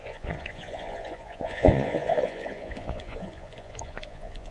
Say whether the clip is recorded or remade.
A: remade